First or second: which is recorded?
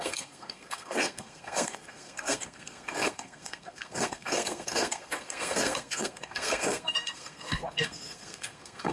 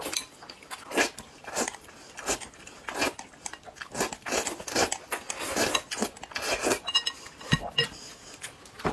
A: second